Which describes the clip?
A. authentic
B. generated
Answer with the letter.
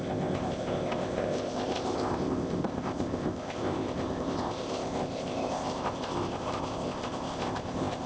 B